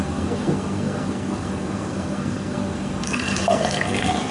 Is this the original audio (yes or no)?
no